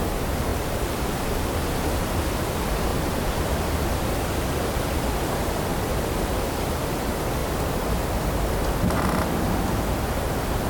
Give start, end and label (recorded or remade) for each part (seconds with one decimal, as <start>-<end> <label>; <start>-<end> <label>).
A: 0.0-0.5 recorded; 0.5-1.5 remade; 1.5-2.9 recorded; 2.9-4.2 remade; 4.2-5.7 recorded; 5.7-6.6 remade; 6.6-7.4 recorded; 7.4-8.6 remade; 8.6-10.7 recorded